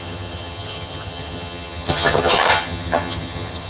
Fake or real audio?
fake